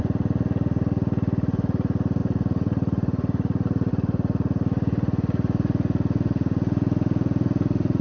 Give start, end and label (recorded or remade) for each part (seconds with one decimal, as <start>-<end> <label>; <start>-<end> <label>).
0.0-2.2 recorded; 2.2-3.9 remade; 3.9-8.0 recorded